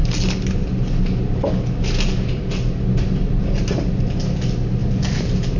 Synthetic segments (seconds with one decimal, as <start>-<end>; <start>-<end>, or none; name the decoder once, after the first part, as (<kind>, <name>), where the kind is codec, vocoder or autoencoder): 4.8-5.6 (vocoder, BigVGAN v2)